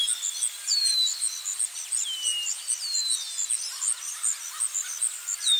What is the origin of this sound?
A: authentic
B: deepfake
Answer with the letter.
A